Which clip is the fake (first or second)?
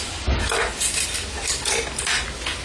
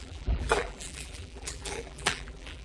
second